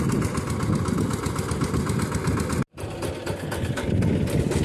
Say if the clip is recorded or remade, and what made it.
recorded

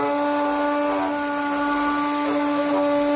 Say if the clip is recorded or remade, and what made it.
recorded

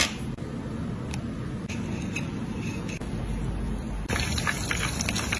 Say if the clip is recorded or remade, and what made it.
recorded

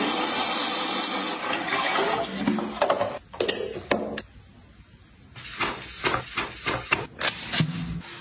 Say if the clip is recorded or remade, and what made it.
recorded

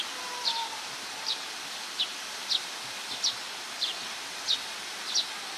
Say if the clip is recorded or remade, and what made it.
recorded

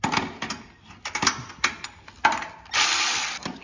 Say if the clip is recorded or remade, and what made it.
recorded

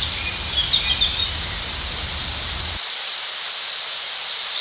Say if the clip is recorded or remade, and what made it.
recorded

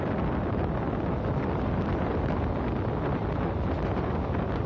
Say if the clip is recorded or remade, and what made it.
recorded